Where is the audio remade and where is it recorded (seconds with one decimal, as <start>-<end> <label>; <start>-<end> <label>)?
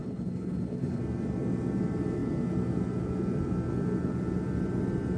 0.0-1.0 remade; 1.0-5.2 recorded